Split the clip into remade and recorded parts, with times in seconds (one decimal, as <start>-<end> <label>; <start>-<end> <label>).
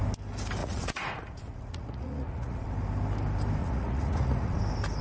0.0-0.6 recorded; 0.6-2.7 remade; 2.7-3.6 recorded; 3.6-4.6 remade; 4.6-5.0 recorded